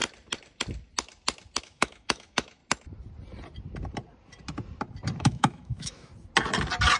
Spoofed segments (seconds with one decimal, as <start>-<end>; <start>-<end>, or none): 1.6-2.6; 5.2-6.1